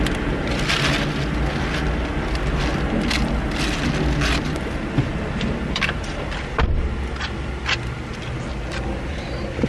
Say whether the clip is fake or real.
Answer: real